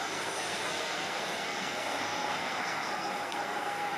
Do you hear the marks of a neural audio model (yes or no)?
yes